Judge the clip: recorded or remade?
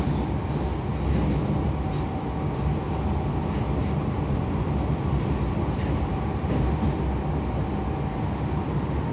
recorded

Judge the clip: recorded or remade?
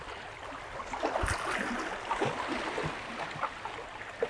recorded